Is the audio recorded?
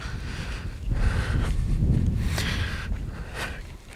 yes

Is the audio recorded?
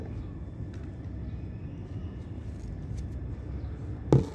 yes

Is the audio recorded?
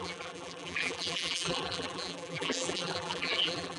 no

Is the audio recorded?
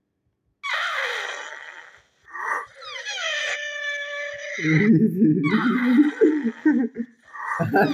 yes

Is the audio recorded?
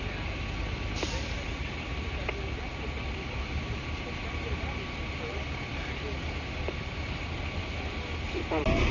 yes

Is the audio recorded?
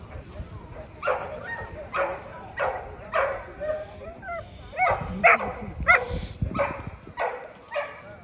no